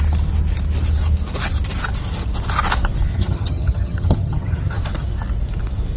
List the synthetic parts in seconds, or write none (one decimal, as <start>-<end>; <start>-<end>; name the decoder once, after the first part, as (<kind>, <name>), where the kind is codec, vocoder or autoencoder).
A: 3.1-4.8 (vocoder, HiFi-GAN)